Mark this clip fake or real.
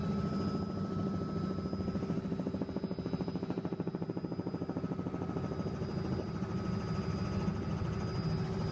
real